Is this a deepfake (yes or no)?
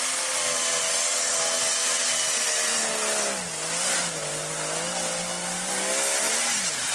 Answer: no